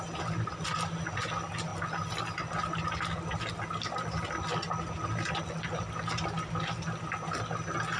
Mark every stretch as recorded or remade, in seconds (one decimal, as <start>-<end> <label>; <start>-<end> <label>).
0.0-8.0 recorded